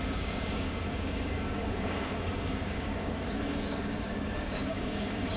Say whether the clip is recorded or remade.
remade